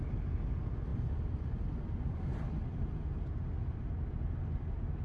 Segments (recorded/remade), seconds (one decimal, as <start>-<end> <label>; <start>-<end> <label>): 0.0-5.0 recorded